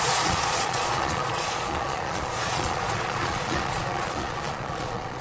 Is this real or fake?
fake